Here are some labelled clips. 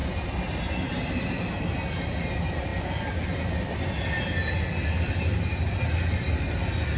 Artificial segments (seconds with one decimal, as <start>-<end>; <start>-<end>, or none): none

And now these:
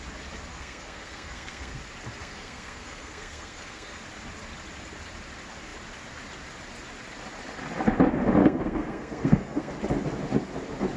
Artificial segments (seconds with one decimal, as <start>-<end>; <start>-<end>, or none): 0.5-1.8; 2.2-4.0; 8.4-9.7

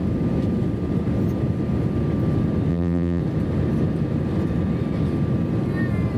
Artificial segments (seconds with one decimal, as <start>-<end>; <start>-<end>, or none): 2.7-3.2

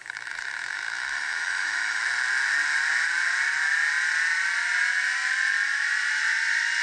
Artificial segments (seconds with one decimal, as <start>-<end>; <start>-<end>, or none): 0.0-2.0

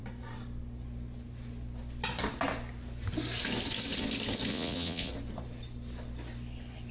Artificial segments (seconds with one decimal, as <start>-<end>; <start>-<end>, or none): 4.5-5.1